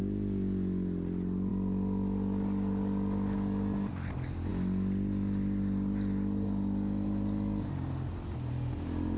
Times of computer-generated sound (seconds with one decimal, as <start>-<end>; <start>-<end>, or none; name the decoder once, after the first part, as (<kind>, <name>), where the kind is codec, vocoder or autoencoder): none